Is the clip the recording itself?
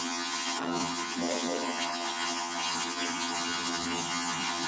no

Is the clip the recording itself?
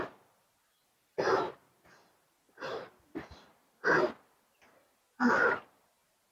yes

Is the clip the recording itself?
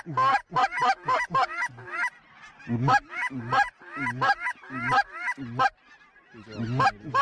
yes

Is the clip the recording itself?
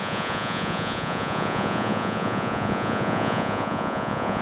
no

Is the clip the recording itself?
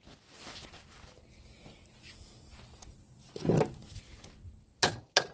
yes